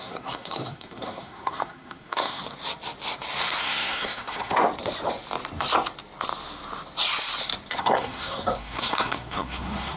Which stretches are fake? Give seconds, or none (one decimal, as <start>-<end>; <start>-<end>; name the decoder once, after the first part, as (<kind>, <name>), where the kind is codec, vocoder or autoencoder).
0.0-2.4 (codec, SNAC); 3.6-4.6; 7.7-10.0